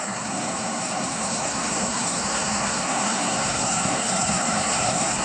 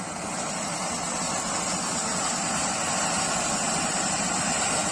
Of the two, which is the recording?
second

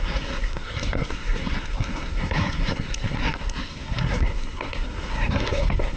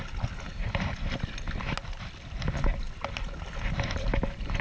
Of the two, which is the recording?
second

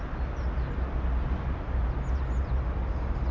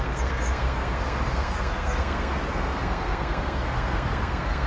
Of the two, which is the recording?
first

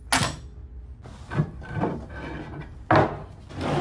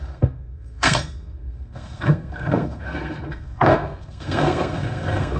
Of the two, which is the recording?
first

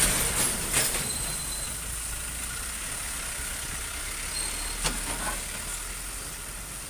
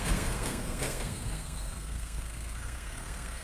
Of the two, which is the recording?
first